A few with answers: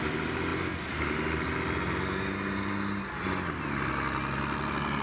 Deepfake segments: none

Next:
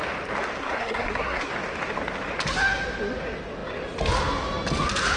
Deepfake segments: 0.6-1.5 (codec, SNAC)

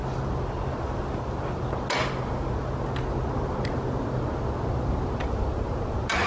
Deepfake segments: none

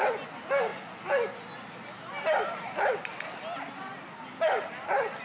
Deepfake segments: none

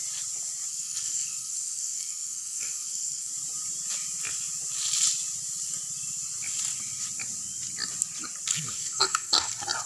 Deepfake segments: 0.7-3.3 (codec, SNAC); 8.5-9.5

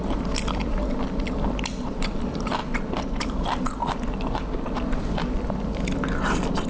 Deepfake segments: 0.0-2.6 (vocoder, BigVGAN v2); 3.6-6.7

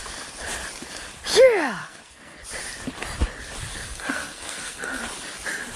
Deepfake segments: 1.8-2.4 (codec, SNAC); 3.7-5.0